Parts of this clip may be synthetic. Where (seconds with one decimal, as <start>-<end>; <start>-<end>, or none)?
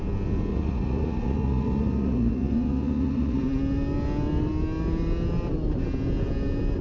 0.5-3.4